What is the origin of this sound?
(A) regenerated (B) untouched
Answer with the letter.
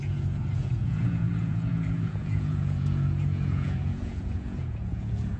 A